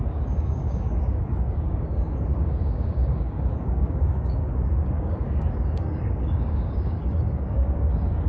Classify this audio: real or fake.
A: fake